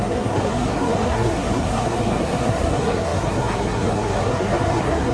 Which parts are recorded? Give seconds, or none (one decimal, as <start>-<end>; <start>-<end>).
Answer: none